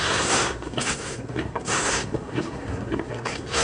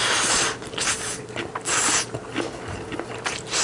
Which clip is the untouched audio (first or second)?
second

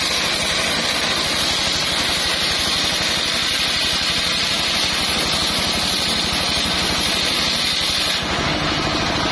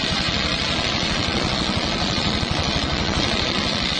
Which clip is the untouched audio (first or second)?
first